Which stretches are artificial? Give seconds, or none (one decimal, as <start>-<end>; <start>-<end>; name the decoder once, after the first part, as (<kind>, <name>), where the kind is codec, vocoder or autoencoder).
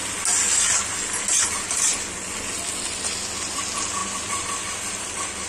none